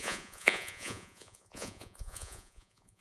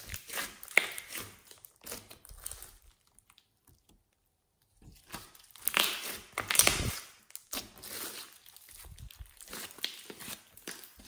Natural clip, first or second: second